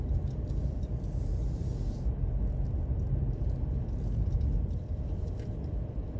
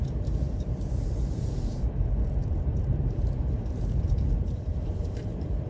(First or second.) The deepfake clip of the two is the second